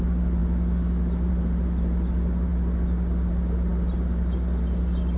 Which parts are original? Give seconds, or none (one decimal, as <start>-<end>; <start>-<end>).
0.0-5.2